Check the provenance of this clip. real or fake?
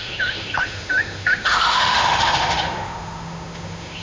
fake